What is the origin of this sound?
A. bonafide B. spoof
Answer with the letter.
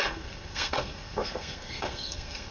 B